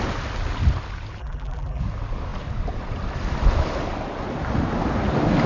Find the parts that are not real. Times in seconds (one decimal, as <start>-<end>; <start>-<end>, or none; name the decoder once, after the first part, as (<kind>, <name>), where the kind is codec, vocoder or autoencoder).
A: 1.2-1.8 (vocoder, BigVGAN v2)

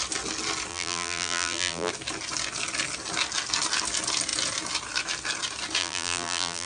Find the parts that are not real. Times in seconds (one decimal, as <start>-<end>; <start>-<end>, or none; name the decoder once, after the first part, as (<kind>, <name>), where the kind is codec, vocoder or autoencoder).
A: 0.7-1.9 (vocoder, BigVGAN v2); 5.8-6.7